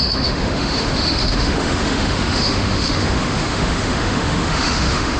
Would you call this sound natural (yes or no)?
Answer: no